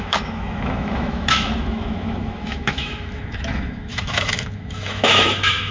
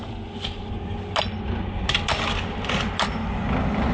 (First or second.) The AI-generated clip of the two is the first